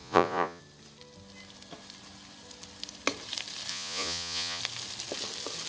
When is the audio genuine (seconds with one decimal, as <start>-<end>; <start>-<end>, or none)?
0.6-3.7; 4.6-5.7